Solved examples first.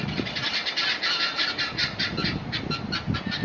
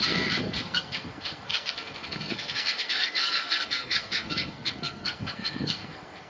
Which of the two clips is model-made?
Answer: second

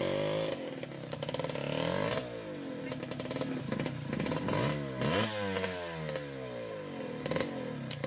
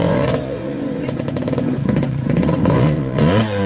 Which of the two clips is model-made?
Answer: second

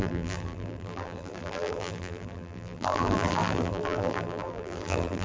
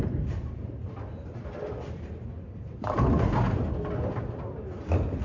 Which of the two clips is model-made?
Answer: first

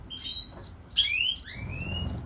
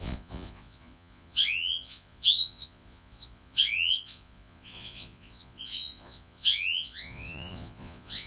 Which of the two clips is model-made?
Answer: second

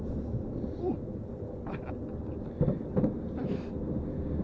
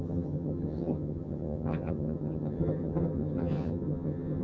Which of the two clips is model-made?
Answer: second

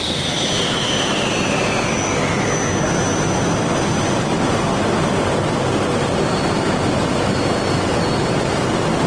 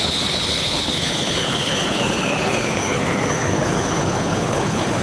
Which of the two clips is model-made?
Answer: second